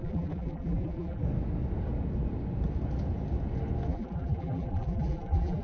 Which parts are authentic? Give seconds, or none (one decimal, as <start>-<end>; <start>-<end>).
1.2-3.9